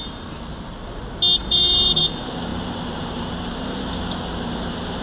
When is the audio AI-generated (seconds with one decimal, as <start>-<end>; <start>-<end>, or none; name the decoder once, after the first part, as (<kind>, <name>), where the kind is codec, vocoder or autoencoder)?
1.4-2.0 (vocoder, BigVGAN v2); 2.5-3.5